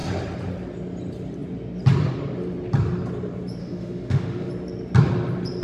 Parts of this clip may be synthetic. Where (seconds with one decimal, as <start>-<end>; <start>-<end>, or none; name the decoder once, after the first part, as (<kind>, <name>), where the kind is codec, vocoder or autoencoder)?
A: 3.6-4.5 (autoencoder, DAC-VAE)